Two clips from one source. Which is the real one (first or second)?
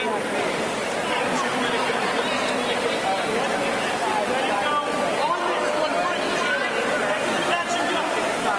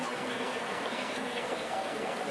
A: first